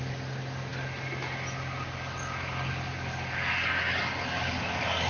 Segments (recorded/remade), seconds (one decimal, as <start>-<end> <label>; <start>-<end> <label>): 0.0-5.1 recorded